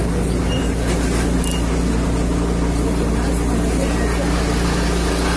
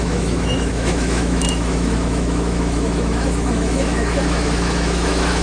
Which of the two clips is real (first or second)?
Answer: first